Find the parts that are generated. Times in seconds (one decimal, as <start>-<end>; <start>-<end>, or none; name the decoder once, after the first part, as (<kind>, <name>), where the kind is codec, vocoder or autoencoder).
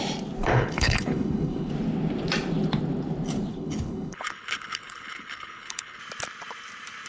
0.5-1.7 (codec, HILCodec); 3.5-6.0